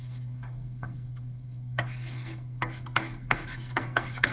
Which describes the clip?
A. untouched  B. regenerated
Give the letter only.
B